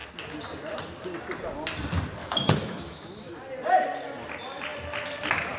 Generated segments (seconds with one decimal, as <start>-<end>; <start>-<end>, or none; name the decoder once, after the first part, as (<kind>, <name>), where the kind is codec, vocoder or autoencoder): 2.2-3.3 (autoencoder, DAC-VAE)